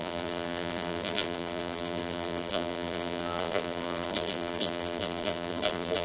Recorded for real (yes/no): no